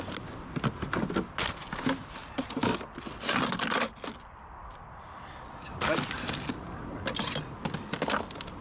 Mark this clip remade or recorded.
recorded